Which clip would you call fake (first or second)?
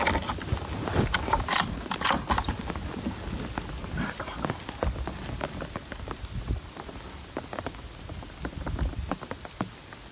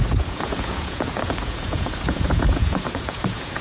second